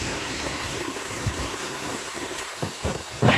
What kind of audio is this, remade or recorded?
remade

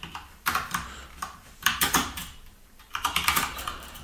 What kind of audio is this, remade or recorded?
remade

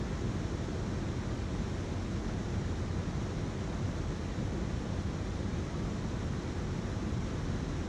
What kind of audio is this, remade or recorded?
recorded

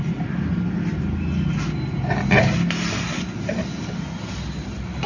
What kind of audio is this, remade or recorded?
recorded